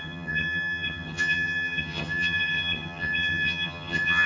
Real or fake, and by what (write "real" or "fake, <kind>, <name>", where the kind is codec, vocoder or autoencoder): fake, vocoder, HiFi-GAN